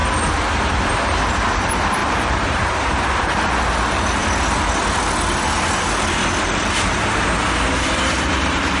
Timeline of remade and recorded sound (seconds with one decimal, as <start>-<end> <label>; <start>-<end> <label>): 0.0-2.0 recorded; 2.0-3.4 remade; 3.4-8.8 recorded